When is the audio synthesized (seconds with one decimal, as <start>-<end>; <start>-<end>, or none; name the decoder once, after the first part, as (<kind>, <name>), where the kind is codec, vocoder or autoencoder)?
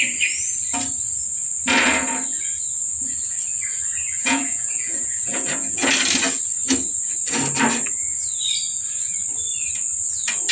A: 4.2-5.9 (vocoder, Vocos)